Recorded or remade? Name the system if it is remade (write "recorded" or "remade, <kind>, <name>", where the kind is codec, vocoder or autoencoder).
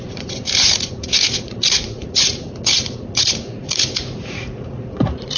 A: remade, vocoder, Vocos